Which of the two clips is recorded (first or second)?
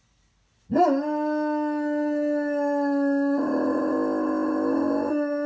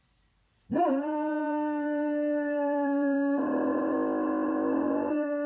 first